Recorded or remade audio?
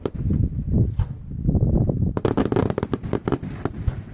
remade